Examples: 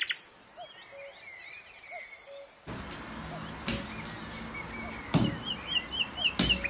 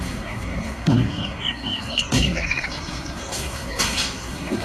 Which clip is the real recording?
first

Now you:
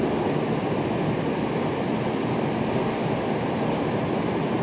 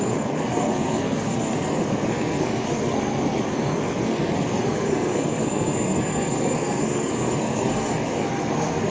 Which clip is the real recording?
first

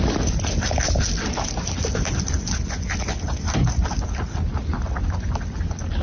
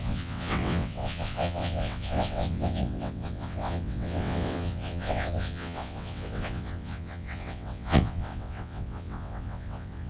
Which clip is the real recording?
first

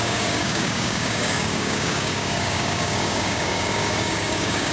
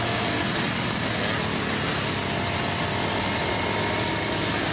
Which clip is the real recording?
second